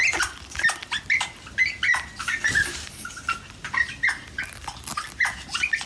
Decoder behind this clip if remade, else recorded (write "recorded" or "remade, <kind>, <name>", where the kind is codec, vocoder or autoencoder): recorded